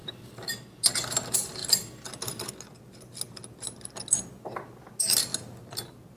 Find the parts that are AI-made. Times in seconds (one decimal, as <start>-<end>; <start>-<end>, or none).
0.0-0.5; 1.6-2.5